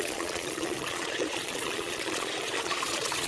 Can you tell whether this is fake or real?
fake